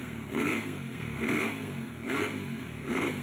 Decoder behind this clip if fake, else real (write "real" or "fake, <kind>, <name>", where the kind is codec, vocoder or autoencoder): fake, codec, SNAC